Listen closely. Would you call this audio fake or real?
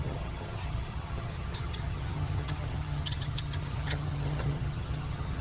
fake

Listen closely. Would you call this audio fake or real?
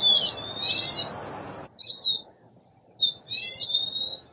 real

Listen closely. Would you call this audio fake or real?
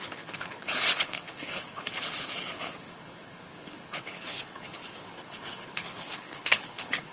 fake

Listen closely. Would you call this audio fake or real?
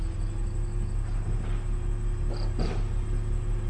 real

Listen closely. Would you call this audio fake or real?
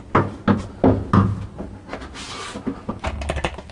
real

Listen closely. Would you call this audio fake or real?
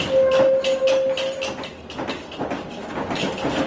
real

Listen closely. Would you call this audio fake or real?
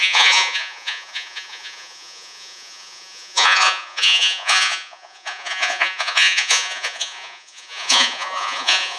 fake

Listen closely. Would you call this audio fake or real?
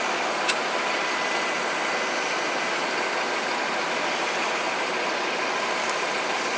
real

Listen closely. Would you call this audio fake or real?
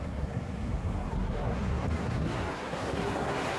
fake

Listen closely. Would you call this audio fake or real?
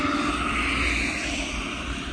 real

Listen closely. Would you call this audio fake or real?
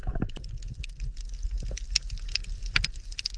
real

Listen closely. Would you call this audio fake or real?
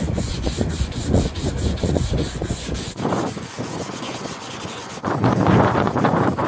fake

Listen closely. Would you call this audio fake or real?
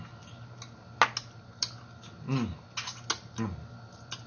real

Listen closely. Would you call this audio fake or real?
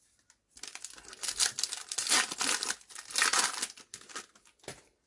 real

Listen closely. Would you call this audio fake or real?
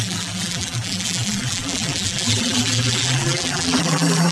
fake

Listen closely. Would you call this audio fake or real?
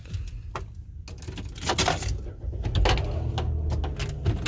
real